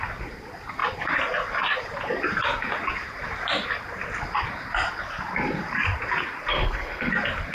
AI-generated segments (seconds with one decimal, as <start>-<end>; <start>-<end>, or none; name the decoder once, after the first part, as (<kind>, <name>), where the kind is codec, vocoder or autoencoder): 6.5-7.1 (codec, SNAC)